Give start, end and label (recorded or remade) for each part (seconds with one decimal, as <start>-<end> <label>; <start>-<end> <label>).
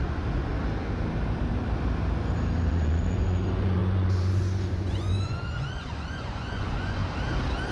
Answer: 0.0-0.5 remade; 0.5-2.7 recorded; 2.7-7.0 remade; 7.0-7.7 recorded